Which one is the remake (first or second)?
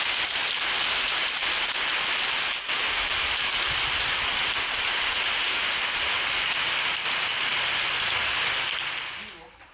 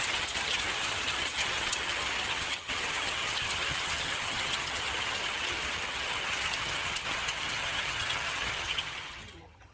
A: second